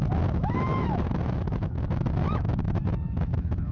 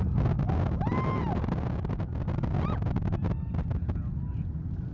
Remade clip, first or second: first